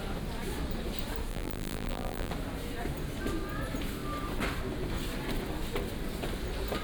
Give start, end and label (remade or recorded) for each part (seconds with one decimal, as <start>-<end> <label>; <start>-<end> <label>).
0.0-1.3 recorded; 1.3-2.3 remade; 2.3-6.8 recorded